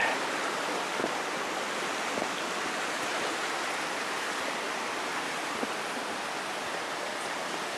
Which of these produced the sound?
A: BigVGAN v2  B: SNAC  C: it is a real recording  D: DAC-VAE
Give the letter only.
C